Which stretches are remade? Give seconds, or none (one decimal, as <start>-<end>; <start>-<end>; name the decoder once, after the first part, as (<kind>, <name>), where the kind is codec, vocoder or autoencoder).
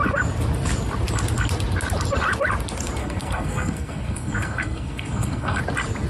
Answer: 3.0-5.6 (codec, SNAC)